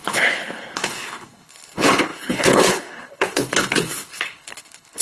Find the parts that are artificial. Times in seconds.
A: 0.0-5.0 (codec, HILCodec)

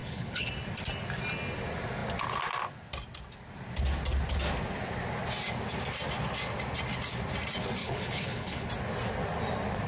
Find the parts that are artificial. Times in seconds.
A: 0.0-0.5 (codec, HILCodec); 7.8-8.7